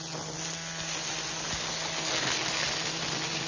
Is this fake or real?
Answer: real